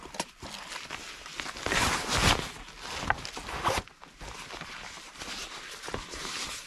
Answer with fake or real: real